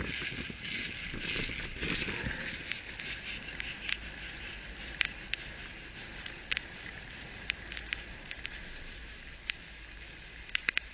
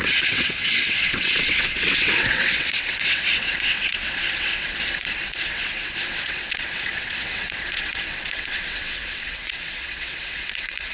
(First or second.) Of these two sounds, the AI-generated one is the second